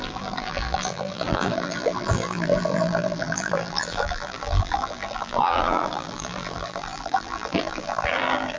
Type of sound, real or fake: fake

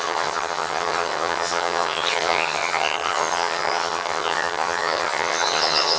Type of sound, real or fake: fake